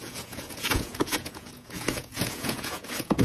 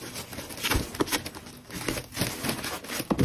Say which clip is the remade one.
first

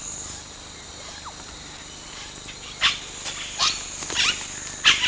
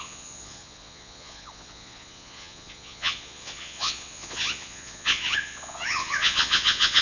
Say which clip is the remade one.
second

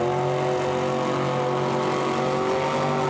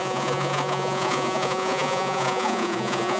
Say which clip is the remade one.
second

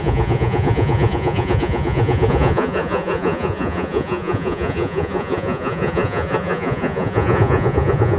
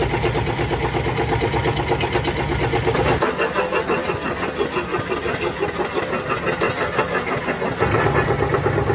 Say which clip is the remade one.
first